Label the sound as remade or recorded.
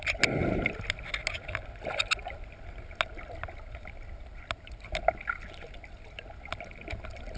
recorded